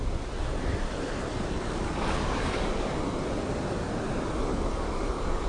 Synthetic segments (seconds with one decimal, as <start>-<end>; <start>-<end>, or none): 1.3-2.9; 4.5-5.5